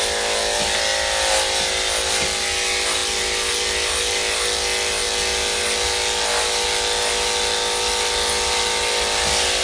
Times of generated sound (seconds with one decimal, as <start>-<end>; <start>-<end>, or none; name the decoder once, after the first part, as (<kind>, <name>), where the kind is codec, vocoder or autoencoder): none